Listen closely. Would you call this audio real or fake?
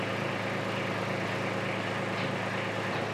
real